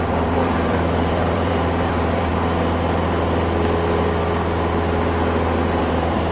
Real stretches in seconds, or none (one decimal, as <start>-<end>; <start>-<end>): 2.3-5.8